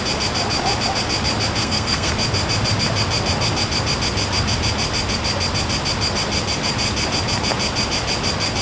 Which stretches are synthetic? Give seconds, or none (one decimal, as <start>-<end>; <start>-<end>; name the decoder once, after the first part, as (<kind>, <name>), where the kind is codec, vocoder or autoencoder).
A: 1.6-2.1 (codec, SNAC)